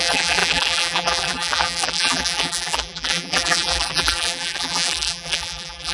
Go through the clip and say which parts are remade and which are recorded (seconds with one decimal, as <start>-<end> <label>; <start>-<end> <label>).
0.0-5.9 remade